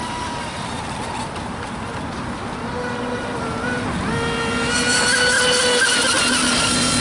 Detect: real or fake real